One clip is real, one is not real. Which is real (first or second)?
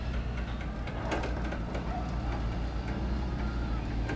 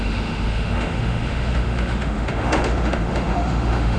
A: first